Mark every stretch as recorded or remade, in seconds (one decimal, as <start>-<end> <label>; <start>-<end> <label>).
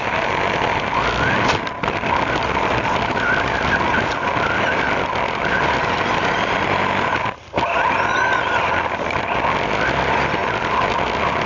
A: 0.0-11.5 recorded